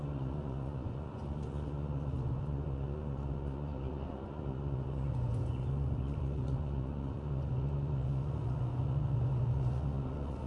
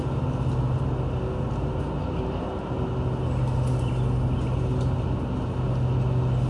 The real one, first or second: second